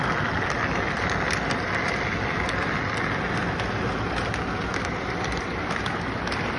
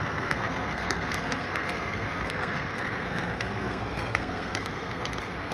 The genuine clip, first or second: first